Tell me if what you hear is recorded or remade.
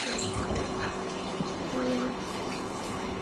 remade